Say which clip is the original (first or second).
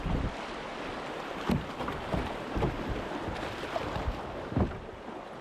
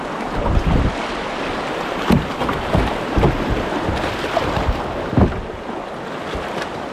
second